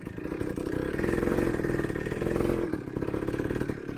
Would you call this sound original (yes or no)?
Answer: yes